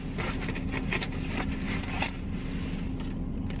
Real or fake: real